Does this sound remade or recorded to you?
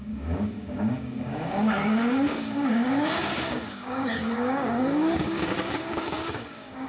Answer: remade